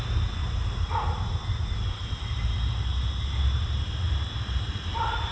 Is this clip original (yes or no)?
yes